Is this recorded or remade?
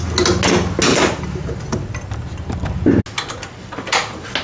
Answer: recorded